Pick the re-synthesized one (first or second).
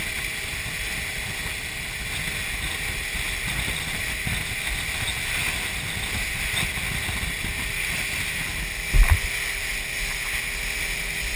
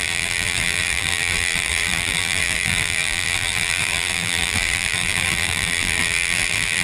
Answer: second